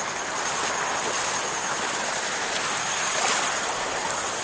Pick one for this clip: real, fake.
real